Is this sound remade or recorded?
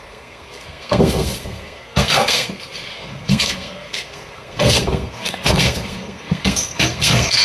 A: remade